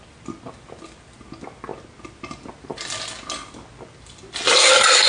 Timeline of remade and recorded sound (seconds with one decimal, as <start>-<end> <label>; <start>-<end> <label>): 0.0-5.1 recorded